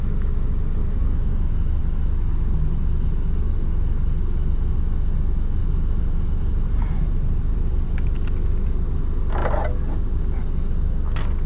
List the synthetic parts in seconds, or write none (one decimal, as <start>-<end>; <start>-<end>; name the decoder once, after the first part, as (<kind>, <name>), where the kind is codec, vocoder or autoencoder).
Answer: 0.8-1.4 (vocoder, BigVGAN v2); 5.6-7.9